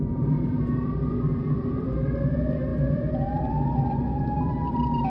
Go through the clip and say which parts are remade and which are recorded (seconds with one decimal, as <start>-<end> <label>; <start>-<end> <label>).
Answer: 0.0-5.1 remade